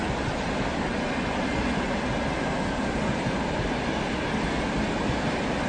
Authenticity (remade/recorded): recorded